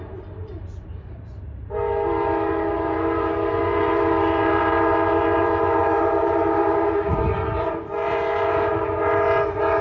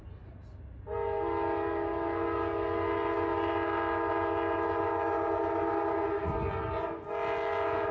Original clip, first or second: second